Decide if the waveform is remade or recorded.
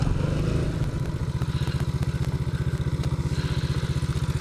recorded